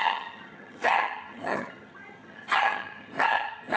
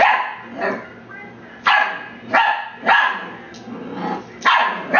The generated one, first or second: first